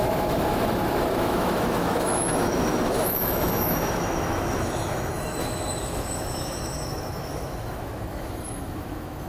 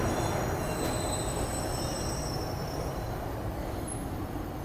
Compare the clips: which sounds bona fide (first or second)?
second